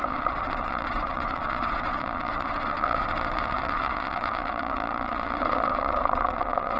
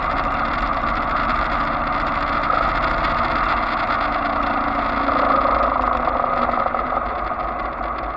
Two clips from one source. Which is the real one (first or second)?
second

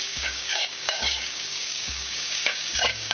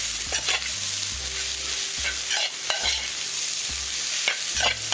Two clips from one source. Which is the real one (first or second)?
second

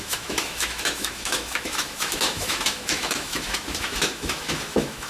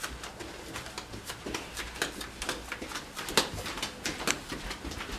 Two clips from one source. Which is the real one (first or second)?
second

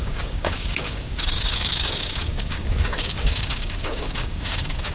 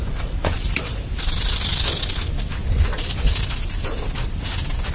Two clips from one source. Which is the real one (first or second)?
second